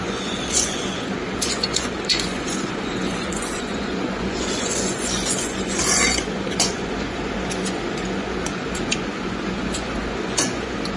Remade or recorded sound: remade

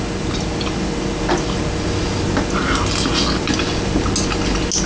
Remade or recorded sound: recorded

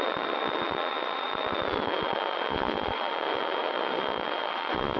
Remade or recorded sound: remade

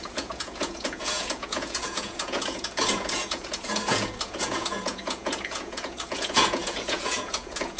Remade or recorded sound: remade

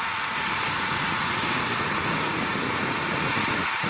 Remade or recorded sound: remade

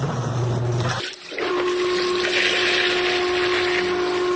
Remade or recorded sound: recorded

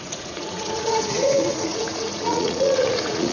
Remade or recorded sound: remade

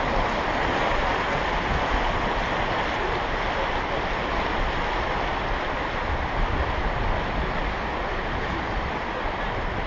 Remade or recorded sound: recorded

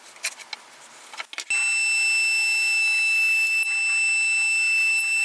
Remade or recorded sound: recorded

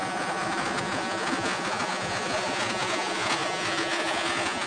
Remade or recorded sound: remade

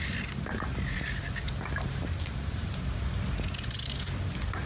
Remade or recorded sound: recorded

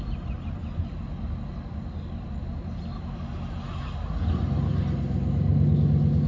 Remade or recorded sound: recorded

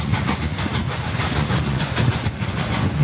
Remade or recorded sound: remade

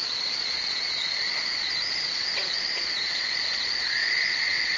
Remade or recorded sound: remade